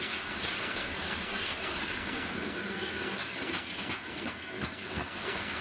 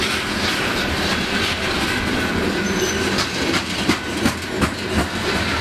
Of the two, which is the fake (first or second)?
first